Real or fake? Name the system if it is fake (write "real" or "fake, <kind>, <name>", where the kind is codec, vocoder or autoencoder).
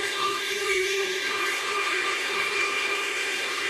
fake, codec, SNAC